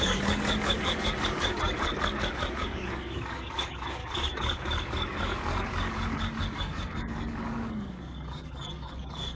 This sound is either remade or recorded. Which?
remade